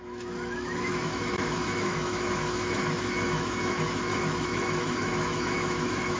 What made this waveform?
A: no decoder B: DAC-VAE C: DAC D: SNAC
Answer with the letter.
B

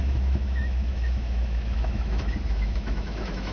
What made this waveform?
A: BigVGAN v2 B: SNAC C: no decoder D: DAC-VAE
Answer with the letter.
D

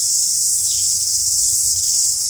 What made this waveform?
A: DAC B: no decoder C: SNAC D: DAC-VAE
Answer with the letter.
B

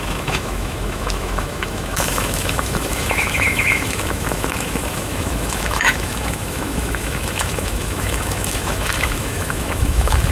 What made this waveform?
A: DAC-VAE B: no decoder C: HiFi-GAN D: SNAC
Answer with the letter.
A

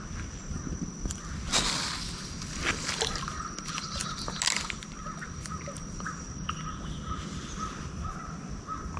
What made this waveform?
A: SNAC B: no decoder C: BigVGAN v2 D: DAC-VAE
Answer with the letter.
B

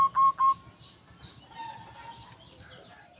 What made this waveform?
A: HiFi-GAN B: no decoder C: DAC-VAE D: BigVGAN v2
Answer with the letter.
B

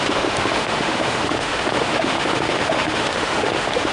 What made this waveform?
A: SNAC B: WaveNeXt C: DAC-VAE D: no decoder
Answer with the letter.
C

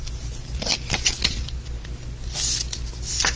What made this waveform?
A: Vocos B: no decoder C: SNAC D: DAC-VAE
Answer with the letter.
B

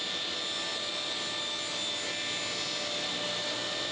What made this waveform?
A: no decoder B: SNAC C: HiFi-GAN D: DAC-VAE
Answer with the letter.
A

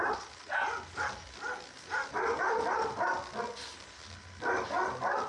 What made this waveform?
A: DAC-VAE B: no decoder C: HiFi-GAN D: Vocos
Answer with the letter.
B